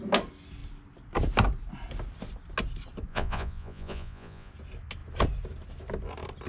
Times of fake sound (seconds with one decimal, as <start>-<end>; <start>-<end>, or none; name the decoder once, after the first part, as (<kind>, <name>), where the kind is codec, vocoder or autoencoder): 3.1-4.5 (vocoder, Vocos)